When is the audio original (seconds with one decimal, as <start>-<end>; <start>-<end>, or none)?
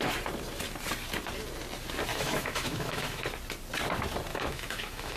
0.0-2.1; 3.2-4.3